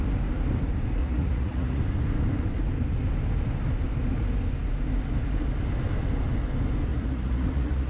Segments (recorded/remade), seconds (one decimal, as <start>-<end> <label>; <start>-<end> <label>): 0.0-1.0 recorded; 1.0-1.8 remade; 1.8-6.9 recorded; 6.9-7.9 remade

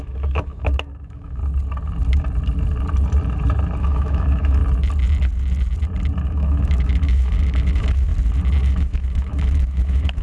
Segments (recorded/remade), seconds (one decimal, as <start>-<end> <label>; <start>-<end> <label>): 0.0-1.4 remade; 1.4-3.8 recorded; 3.8-4.6 remade; 4.6-6.2 recorded; 6.2-8.1 remade; 8.1-8.6 recorded; 8.6-10.2 remade

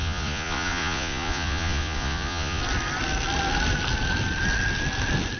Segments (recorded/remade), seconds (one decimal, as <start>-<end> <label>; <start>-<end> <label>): 0.0-2.6 remade; 2.6-5.4 recorded

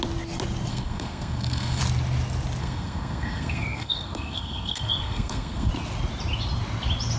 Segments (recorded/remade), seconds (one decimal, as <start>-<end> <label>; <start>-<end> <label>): 0.0-0.7 recorded; 0.7-1.8 remade; 1.8-2.6 recorded; 2.6-5.7 remade; 5.7-7.2 recorded

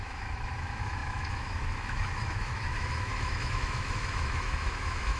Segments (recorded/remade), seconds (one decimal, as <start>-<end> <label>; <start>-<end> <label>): 0.0-5.2 remade